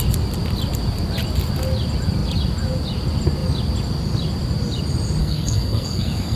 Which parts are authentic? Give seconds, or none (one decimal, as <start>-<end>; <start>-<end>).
0.0-5.2